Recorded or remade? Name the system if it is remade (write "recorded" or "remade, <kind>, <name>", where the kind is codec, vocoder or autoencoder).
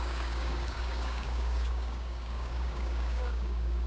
remade, codec, DAC